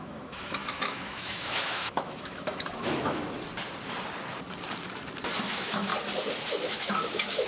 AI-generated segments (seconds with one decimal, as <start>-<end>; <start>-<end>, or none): 0.0-3.2; 5.4-5.9; 6.5-7.5